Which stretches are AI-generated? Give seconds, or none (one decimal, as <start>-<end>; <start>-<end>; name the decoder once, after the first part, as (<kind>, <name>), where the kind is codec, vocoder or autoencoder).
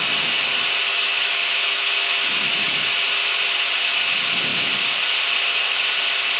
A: 0.9-2.9 (autoencoder, DAC-VAE)